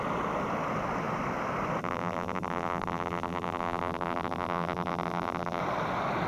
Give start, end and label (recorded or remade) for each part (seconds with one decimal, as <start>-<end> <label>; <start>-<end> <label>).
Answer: 0.0-1.8 recorded; 1.8-5.6 remade; 5.6-6.3 recorded